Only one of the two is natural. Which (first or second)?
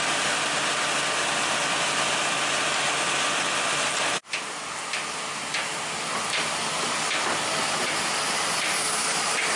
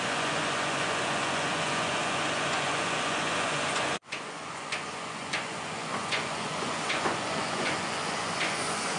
first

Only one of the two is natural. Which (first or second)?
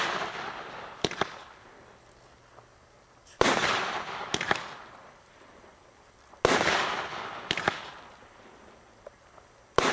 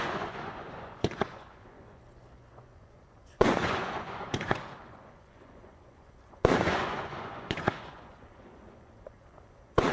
first